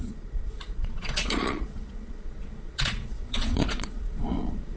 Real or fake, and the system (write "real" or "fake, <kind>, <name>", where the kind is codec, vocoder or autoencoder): fake, vocoder, Vocos